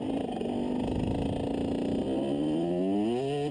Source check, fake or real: real